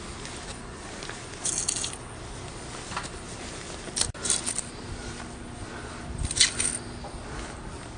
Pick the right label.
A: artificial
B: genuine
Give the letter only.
B